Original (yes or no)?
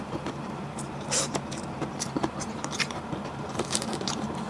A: no